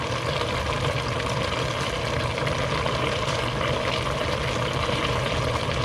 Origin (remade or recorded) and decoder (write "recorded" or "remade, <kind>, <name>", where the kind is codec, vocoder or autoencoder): recorded